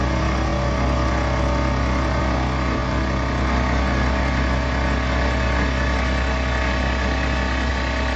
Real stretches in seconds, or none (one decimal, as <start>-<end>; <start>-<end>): 0.0-8.2

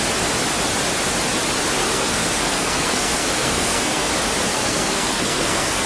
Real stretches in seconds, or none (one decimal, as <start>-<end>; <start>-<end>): 0.0-1.8; 4.1-4.5

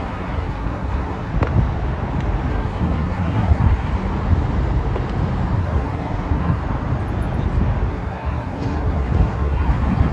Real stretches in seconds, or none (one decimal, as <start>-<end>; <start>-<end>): 1.3-2.5; 3.9-5.6; 6.6-7.9

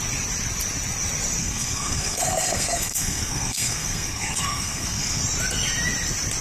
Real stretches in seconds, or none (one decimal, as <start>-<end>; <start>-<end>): 0.0-1.4; 5.2-6.4